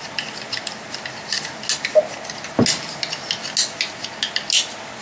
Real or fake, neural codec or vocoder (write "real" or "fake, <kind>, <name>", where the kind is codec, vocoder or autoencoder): real